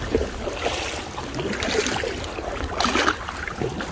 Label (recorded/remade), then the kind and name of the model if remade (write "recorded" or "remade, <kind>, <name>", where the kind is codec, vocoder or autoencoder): recorded